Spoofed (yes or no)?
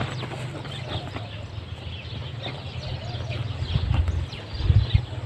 no